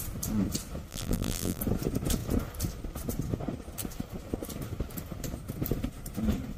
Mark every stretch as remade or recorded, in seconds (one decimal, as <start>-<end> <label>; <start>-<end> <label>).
0.0-0.9 recorded; 0.9-1.6 remade; 1.6-6.6 recorded